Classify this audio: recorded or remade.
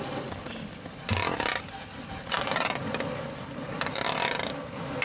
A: recorded